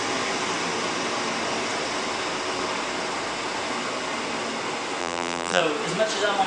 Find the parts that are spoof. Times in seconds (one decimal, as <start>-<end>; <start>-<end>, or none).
5.0-5.6